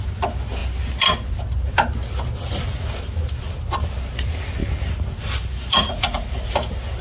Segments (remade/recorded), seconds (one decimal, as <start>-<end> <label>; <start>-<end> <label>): 0.0-7.0 recorded